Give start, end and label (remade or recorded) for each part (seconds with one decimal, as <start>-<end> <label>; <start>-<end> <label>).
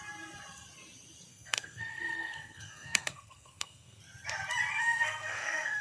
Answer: 0.0-1.3 recorded; 1.3-4.0 remade; 4.0-4.7 recorded; 4.7-5.8 remade